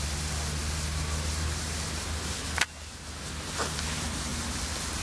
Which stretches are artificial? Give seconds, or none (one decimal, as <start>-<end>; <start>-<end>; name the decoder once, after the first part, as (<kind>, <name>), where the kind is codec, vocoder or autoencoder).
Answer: none